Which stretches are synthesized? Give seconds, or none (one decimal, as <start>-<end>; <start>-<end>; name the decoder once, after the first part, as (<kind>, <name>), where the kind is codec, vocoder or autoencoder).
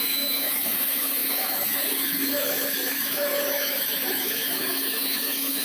0.0-5.6 (autoencoder, DAC-VAE)